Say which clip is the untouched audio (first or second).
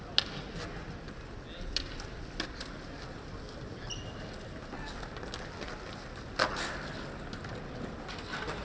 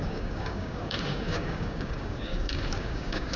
first